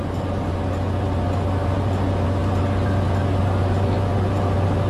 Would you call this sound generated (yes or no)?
no